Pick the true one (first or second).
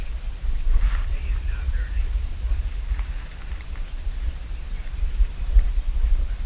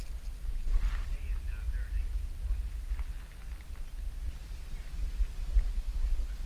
second